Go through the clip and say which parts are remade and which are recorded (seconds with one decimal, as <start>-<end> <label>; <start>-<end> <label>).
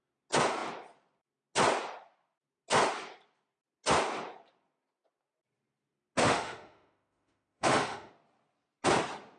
0.0-6.2 recorded; 6.2-8.1 remade; 8.1-9.4 recorded